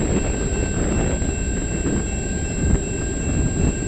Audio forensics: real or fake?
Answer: real